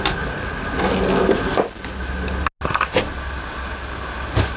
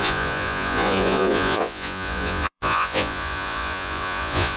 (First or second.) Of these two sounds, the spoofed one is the second